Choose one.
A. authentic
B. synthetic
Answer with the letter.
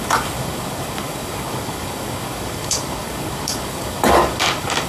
B